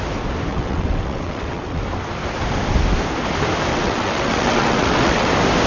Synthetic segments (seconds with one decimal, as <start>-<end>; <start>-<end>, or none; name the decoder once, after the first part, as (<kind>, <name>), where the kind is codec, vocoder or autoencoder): 0.5-1.8 (vocoder, WaveNeXt); 3.7-5.3

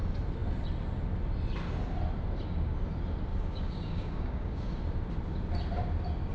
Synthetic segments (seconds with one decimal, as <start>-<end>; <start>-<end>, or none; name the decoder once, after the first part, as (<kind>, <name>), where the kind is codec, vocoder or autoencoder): 3.3-4.8 (codec, DAC)

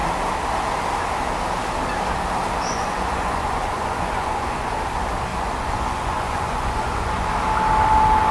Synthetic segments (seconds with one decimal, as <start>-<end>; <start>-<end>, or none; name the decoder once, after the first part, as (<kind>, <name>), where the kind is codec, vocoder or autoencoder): 2.7-4.7 (vocoder, Vocos); 5.3-7.3

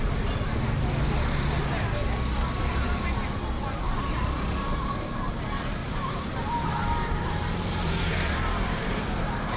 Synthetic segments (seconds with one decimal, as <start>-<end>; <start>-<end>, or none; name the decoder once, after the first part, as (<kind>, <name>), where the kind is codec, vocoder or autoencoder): 5.8-9.2 (vocoder, BigVGAN v2)

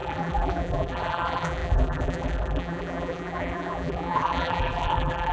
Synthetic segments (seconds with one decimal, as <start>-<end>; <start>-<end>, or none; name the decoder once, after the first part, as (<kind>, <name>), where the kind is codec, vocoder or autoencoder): 0.0-5.3 (vocoder, BigVGAN v2)